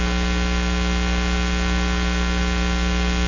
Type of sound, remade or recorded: recorded